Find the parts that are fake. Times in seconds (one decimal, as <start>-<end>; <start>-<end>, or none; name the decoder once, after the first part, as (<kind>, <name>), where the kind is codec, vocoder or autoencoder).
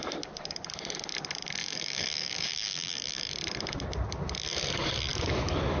1.6-3.3 (codec, DAC)